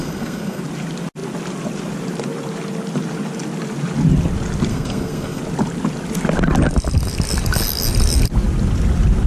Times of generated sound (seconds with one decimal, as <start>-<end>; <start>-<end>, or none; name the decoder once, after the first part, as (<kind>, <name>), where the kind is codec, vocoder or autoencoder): 0.0-0.6 (codec, SNAC); 4.7-5.4